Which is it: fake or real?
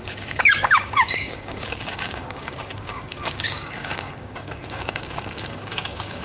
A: fake